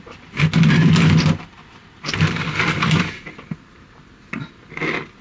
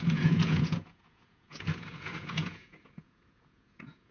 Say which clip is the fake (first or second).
second